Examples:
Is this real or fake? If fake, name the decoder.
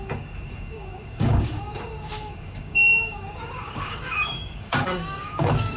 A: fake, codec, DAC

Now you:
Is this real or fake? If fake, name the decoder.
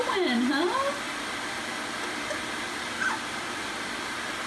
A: real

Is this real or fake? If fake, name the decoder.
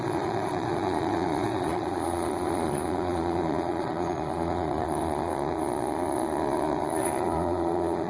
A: fake, vocoder, Vocos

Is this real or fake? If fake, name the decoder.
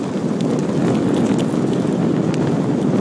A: real